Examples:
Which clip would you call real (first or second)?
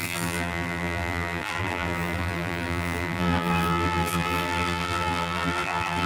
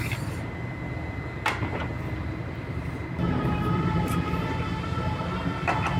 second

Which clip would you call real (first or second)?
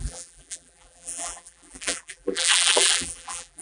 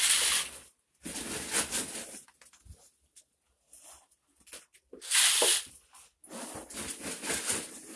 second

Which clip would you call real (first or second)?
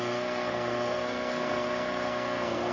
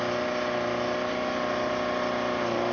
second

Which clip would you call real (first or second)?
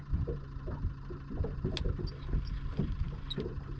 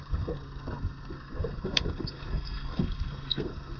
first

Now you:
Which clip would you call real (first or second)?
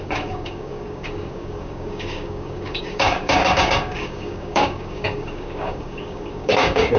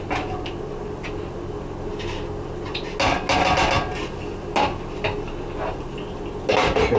second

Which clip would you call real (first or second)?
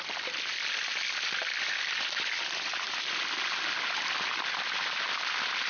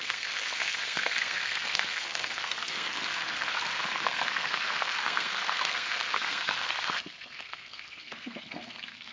first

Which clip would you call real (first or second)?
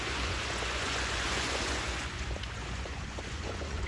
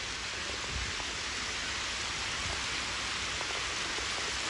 second